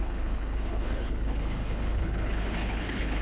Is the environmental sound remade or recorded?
remade